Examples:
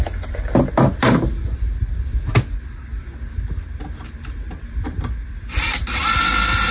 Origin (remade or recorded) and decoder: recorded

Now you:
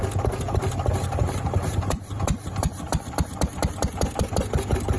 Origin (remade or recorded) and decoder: recorded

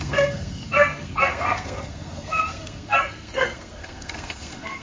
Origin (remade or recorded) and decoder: remade, codec, SNAC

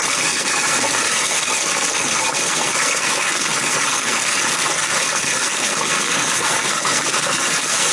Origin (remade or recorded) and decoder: remade, codec, SNAC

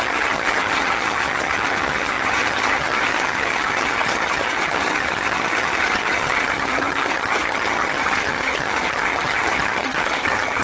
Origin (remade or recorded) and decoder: remade, vocoder, HiFi-GAN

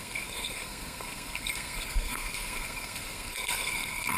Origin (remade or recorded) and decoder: remade, codec, SNAC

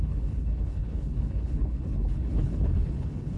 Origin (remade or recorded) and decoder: remade, codec, HILCodec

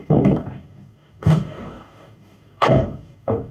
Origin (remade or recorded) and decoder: remade, codec, DAC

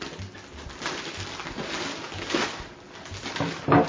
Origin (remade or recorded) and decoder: recorded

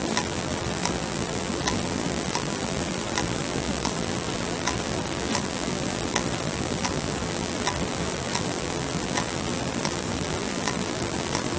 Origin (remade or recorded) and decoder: remade, vocoder, BigVGAN v2